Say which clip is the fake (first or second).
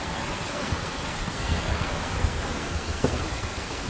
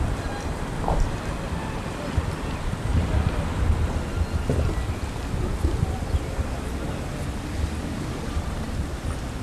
first